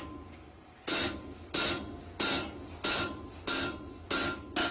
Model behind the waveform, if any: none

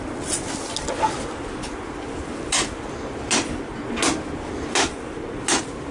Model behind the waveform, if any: none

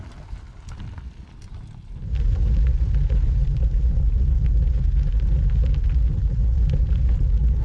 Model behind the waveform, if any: none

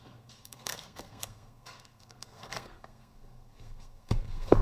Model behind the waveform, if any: codec, SNAC